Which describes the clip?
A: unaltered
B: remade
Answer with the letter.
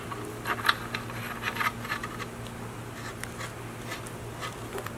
A